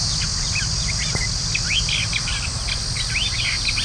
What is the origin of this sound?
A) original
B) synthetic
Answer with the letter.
A